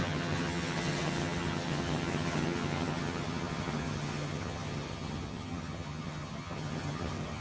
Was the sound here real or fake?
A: fake